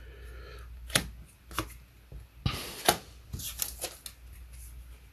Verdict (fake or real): real